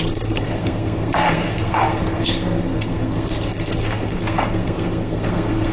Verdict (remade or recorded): remade